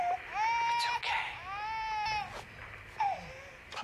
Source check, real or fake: real